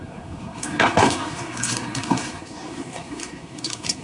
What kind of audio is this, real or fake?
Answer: fake